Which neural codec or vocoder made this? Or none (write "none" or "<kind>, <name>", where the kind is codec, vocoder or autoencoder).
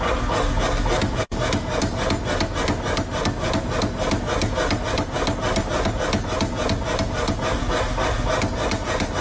none